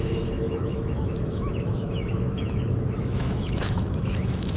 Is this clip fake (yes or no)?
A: yes